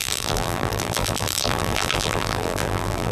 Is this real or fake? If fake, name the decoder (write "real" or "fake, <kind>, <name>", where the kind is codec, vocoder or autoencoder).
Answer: fake, vocoder, BigVGAN v2